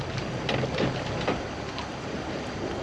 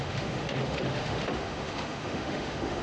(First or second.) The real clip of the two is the first